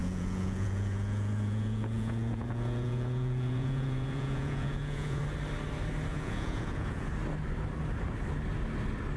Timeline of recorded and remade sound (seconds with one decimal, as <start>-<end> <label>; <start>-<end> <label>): 0.0-5.2 remade; 5.2-6.1 recorded; 6.1-7.1 remade; 7.1-9.2 recorded